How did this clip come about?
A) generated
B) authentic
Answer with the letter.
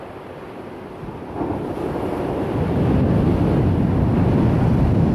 B